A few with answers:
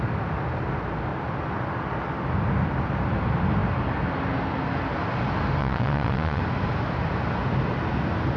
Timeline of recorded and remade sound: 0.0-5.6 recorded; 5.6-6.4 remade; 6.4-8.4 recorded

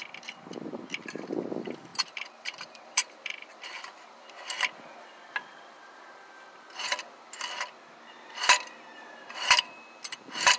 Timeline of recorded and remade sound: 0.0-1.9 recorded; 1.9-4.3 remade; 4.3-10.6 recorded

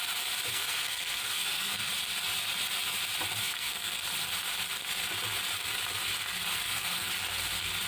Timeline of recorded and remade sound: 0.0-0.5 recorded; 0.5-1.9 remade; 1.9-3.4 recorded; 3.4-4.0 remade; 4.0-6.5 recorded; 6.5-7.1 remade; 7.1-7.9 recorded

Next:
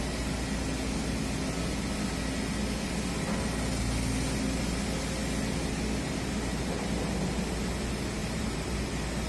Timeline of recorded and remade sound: 0.0-8.2 recorded; 8.2-8.9 remade; 8.9-9.3 recorded